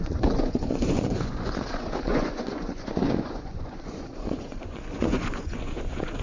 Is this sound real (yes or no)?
no